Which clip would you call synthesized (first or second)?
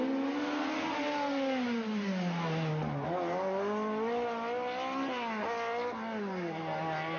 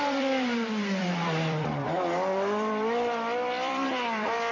second